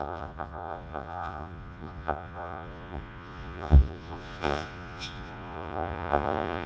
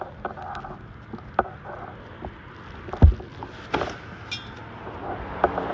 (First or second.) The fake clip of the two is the first